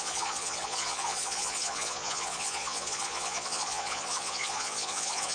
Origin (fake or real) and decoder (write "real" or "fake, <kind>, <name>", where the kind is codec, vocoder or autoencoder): fake, vocoder, Vocos